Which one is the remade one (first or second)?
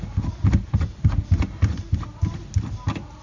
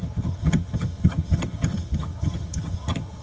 second